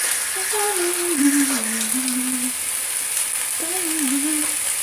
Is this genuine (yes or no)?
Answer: yes